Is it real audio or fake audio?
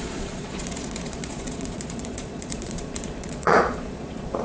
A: fake